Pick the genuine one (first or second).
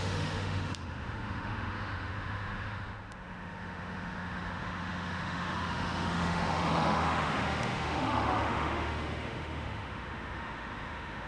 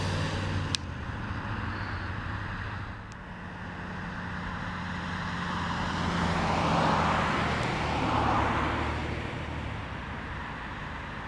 second